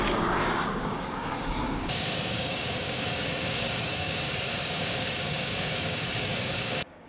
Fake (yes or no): yes